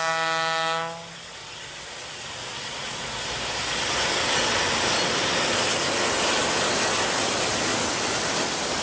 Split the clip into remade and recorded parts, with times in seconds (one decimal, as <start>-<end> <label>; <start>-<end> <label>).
0.0-8.8 recorded